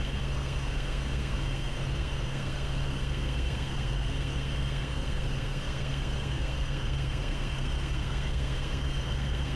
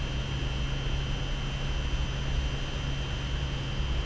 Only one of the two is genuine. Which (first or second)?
second